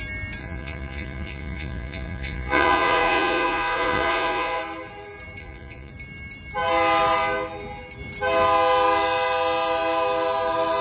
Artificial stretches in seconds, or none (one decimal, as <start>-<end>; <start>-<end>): 0.4-4.6; 5.4-5.9